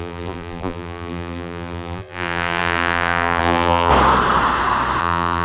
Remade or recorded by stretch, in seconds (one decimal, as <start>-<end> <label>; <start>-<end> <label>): 0.0-3.9 remade; 3.9-5.0 recorded; 5.0-5.4 remade